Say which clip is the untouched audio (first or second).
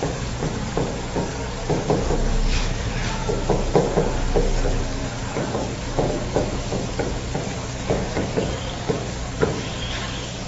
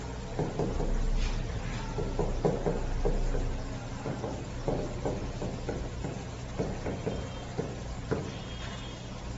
second